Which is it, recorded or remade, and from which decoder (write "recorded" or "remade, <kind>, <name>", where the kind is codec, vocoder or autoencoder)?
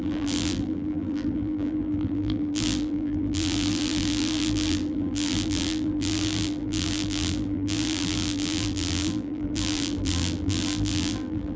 remade, vocoder, BigVGAN v2